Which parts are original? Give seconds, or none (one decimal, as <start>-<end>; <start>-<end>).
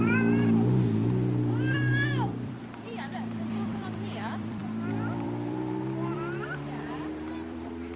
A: none